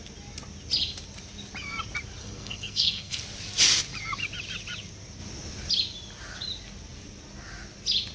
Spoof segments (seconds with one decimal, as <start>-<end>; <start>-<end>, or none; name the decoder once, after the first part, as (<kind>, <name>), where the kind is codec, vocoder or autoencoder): 2.2-3.2 (codec, SNAC)

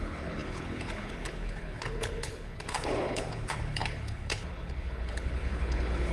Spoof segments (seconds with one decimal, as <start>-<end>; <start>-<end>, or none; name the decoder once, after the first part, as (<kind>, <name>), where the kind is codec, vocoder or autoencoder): 0.0-6.1 (codec, HILCodec)

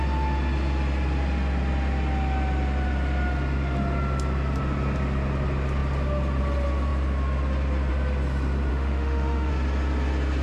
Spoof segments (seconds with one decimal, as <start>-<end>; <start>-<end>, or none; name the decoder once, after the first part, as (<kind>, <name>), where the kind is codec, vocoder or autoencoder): 8.7-9.5 (autoencoder, DAC-VAE)

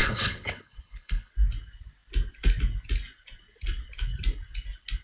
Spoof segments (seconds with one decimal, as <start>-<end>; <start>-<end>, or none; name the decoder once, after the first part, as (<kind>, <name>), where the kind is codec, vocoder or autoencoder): 0.0-1.3 (codec, HILCodec)

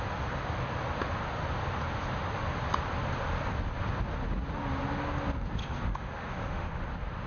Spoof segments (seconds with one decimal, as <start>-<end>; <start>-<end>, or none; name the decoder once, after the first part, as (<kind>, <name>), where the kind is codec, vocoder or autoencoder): 5.6-6.7 (autoencoder, DAC-VAE)

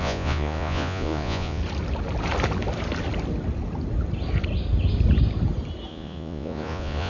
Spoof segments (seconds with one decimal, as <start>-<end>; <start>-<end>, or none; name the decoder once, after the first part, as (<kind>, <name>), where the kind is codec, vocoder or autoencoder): 0.0-1.6 (vocoder, Vocos); 5.9-7.1

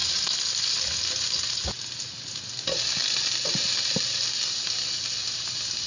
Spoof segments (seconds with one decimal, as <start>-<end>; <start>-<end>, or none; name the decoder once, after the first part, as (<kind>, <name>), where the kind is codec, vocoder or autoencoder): 3.0-4.3 (vocoder, BigVGAN v2)